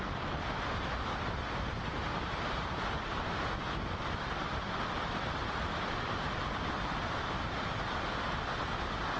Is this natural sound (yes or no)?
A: yes